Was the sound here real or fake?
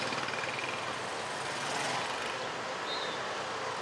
real